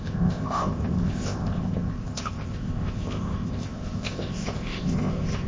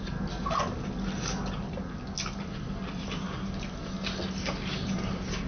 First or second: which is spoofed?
first